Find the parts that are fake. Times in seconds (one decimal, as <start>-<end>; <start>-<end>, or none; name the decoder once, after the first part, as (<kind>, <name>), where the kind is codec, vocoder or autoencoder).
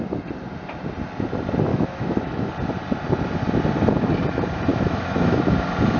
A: 1.7-2.5 (autoencoder, DAC-VAE); 4.7-5.5